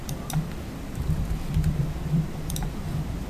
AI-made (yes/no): yes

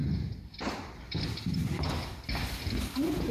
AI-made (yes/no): yes